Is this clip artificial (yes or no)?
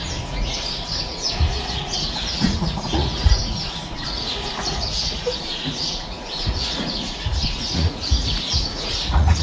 yes